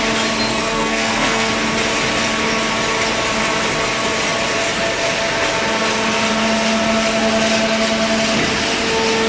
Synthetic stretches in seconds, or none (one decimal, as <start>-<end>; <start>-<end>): 0.5-1.5